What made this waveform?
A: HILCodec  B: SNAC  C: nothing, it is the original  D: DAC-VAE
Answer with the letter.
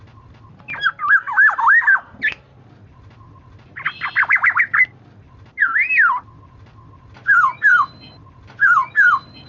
C